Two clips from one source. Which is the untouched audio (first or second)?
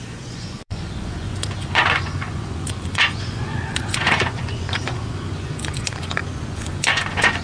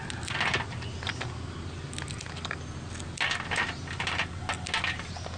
second